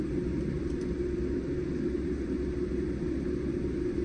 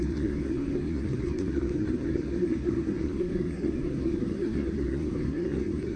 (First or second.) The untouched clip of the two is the first